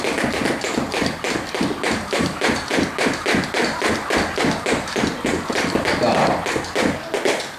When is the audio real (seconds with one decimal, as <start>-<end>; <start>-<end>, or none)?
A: 0.0-7.6